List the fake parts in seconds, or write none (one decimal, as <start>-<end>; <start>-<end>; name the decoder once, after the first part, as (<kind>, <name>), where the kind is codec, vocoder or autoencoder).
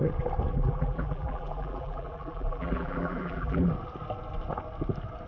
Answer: 0.5-3.7 (vocoder, BigVGAN v2)